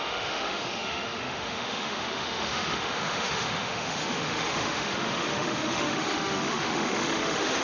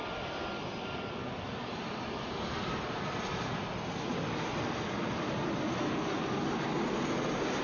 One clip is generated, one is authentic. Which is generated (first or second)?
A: first